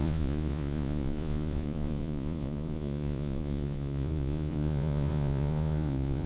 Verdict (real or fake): fake